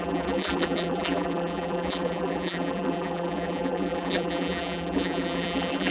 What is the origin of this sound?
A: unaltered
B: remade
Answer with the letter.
B